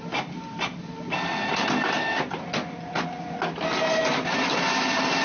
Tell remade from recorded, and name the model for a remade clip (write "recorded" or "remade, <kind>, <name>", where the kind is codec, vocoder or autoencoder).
recorded